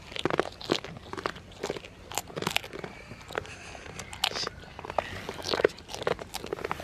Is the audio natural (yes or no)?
yes